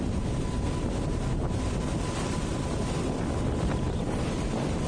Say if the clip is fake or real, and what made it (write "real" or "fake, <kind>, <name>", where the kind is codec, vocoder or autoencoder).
real